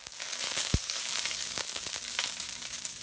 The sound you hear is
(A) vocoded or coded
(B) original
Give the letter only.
A